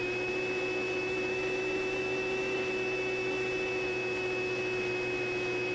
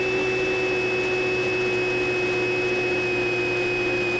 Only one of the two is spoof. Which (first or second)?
first